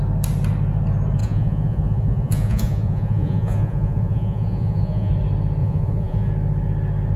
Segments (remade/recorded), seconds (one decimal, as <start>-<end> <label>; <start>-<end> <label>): 0.0-1.2 recorded; 1.2-5.1 remade; 5.1-5.6 recorded; 5.6-6.3 remade; 6.3-7.2 recorded